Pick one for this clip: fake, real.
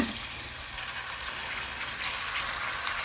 real